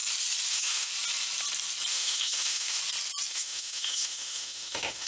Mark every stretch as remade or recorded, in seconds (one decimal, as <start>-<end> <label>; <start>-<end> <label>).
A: 0.0-0.5 recorded; 0.5-0.9 remade; 0.9-1.9 recorded; 1.9-2.8 remade; 2.8-3.3 recorded; 3.3-5.1 remade